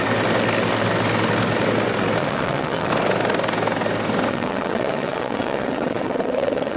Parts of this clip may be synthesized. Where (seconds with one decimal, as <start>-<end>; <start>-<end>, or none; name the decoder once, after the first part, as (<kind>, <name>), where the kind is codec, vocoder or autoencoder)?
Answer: 2.2-2.9 (vocoder, WaveNeXt); 4.3-6.8